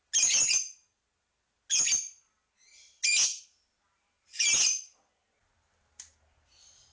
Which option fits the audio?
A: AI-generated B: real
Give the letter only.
B